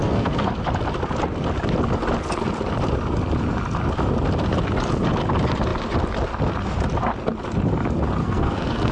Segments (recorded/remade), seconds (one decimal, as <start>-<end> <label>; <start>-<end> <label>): 0.0-0.5 remade; 0.5-8.2 recorded; 8.2-8.9 remade